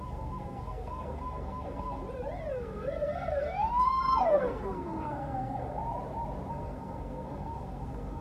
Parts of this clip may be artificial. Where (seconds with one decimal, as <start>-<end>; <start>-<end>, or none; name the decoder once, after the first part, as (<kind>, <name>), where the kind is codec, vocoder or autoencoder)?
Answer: 0.0-2.0 (codec, SNAC); 2.5-5.8; 6.5-8.2